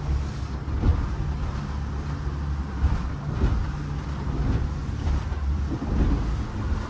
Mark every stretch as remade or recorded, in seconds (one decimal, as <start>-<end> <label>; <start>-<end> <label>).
0.0-4.8 recorded; 4.8-5.9 remade; 5.9-6.9 recorded